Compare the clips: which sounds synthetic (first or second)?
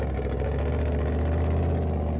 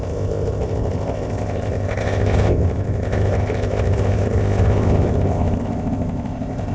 second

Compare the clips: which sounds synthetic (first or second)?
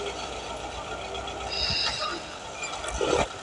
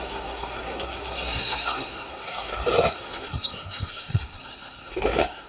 second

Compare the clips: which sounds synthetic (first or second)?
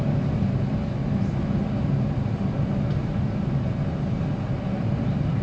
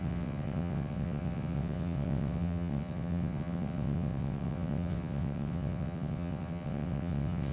second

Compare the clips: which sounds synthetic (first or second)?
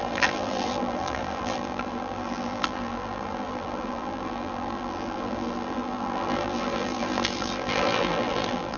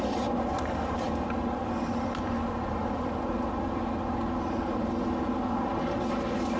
first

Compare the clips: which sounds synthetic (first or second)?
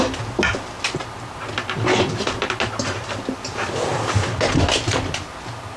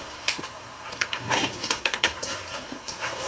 second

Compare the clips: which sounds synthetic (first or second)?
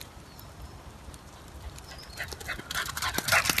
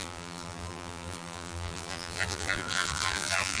second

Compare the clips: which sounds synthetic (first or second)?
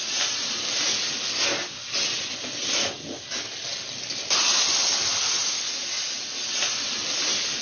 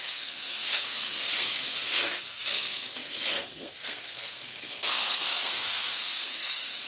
second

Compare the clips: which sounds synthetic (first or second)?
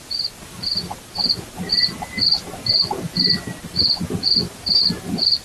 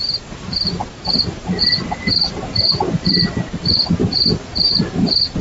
second